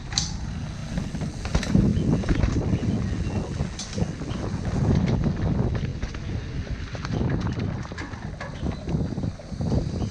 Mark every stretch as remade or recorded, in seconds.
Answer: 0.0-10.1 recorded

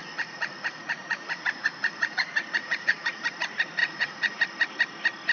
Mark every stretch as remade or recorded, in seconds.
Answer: 0.0-3.2 remade; 3.2-3.8 recorded; 3.8-4.4 remade; 4.4-5.3 recorded

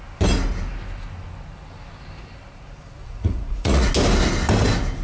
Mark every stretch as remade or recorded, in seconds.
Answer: 0.0-3.0 recorded; 3.0-3.9 remade; 3.9-5.0 recorded

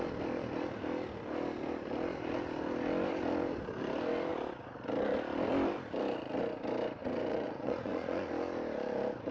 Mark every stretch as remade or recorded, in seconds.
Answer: 0.0-7.0 recorded; 7.0-8.3 remade; 8.3-9.3 recorded

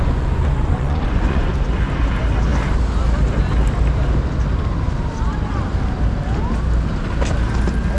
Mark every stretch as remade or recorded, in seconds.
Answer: 0.0-1.5 remade; 1.5-8.0 recorded

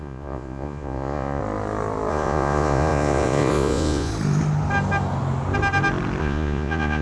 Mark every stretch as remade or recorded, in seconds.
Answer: 0.0-1.4 remade; 1.4-2.1 recorded; 2.1-4.1 remade; 4.1-6.2 recorded; 6.2-7.0 remade